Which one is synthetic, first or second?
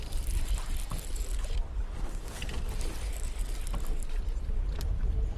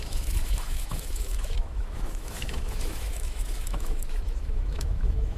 second